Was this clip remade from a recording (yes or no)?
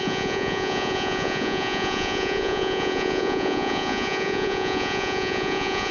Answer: yes